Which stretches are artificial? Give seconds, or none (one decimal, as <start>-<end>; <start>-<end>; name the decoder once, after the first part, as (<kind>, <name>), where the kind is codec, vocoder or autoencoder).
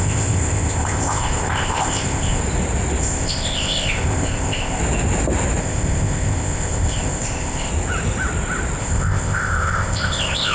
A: 0.0-2.4 (codec, ZipCodec); 3.0-4.8; 5.6-7.7; 8.8-10.5